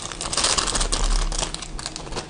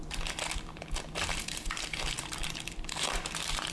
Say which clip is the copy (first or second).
second